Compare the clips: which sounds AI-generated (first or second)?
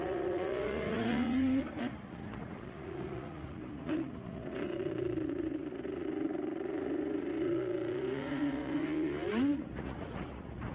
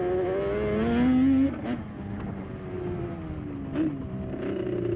first